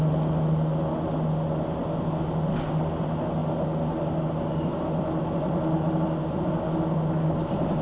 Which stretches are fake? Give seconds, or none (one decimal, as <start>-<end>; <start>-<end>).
none